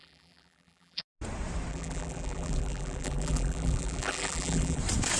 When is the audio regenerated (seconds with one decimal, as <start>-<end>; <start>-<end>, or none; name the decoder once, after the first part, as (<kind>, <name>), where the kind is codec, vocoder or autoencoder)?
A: 0.0-1.0 (vocoder, BigVGAN v2); 1.7-4.8